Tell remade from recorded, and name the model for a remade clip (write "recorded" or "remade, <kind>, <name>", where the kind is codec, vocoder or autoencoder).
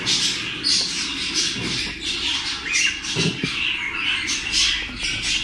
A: recorded